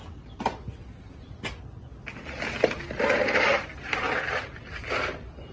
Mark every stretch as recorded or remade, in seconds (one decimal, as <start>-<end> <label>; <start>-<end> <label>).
0.0-5.5 recorded